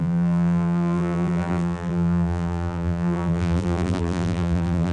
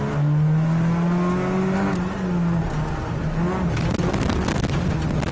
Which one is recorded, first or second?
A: second